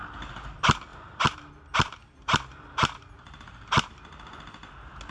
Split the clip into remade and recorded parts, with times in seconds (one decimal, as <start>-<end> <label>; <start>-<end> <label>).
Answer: 0.0-0.9 recorded; 0.9-1.5 remade; 1.5-2.5 recorded; 2.5-4.3 remade; 4.3-5.1 recorded